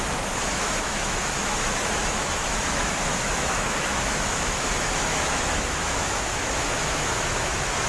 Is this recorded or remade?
remade